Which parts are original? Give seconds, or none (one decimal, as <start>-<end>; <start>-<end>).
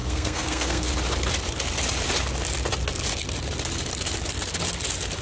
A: 0.9-5.2